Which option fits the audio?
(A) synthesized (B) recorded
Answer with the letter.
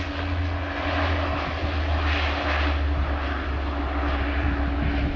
B